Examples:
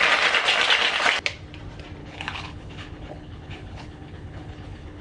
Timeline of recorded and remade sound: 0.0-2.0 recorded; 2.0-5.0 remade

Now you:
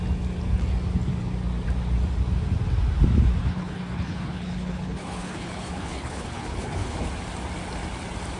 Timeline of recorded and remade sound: 0.0-3.4 recorded; 3.4-7.1 remade; 7.1-8.4 recorded

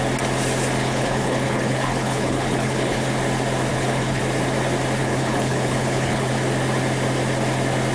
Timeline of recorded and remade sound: 0.0-0.8 recorded; 0.8-3.1 remade; 3.1-3.7 recorded; 3.7-4.2 remade; 4.2-5.0 recorded; 5.0-6.3 remade; 6.3-7.9 recorded

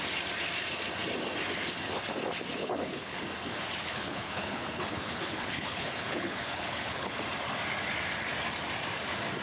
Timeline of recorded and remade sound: 0.0-2.6 recorded; 2.6-3.2 remade; 3.2-3.8 recorded; 3.8-7.1 remade; 7.1-9.4 recorded

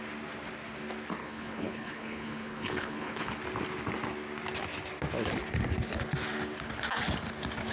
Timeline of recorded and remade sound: 0.0-1.2 recorded; 1.2-3.3 remade; 3.3-7.7 recorded

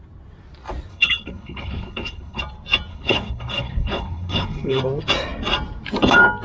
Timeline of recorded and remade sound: 0.0-0.9 recorded; 0.9-2.4 remade; 2.4-2.9 recorded; 2.9-4.8 remade; 4.8-6.4 recorded

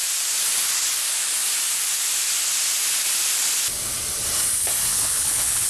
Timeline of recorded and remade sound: 0.0-4.9 recorded; 4.9-5.7 remade